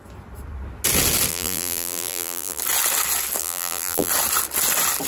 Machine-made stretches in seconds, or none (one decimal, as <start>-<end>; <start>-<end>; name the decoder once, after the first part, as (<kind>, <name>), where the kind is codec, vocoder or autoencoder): 1.3-2.6 (vocoder, BigVGAN v2); 3.4-4.1